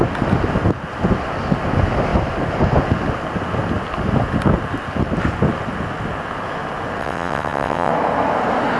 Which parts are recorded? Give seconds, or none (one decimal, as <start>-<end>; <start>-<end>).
0.0-7.0; 7.9-8.8